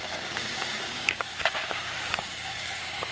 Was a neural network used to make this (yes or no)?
yes